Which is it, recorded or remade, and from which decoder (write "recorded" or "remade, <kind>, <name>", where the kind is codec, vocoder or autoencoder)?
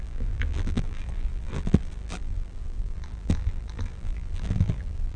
remade, vocoder, BigVGAN v2